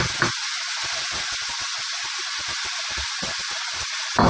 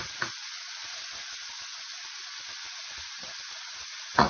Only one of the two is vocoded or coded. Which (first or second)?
second